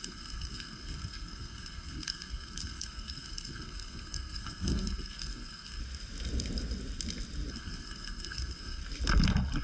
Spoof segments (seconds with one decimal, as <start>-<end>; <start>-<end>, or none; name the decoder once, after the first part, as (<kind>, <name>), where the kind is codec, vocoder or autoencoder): 0.0-5.8 (codec, SNAC); 7.5-8.8